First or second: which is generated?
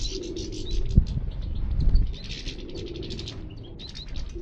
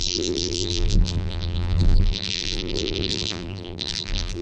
second